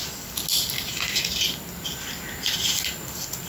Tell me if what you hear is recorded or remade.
recorded